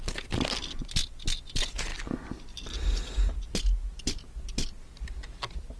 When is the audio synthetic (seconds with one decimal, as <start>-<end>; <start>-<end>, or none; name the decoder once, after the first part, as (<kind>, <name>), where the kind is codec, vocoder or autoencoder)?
none